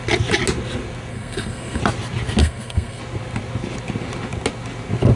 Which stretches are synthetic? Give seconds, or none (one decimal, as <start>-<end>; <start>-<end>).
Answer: 1.1-1.8; 2.4-3.0